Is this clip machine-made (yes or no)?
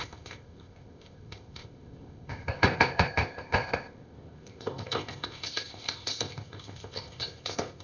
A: yes